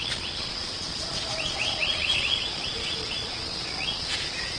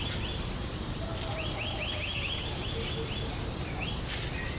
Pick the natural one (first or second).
second